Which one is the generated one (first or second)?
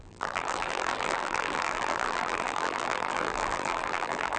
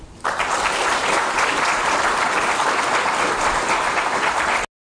first